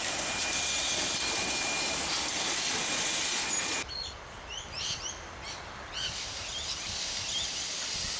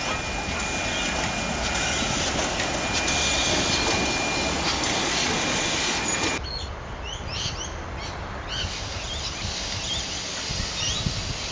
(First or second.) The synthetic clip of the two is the first